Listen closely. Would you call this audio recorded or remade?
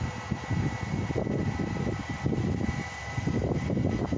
recorded